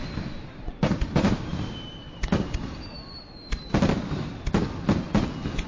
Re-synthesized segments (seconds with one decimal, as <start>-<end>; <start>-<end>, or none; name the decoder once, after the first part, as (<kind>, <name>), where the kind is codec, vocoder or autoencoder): none